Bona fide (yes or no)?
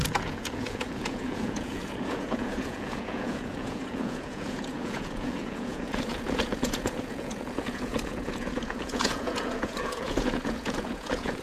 no